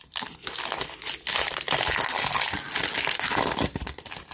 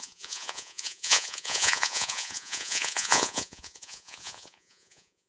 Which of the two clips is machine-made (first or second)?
second